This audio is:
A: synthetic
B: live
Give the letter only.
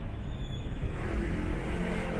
A